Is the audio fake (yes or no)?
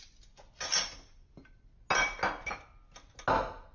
no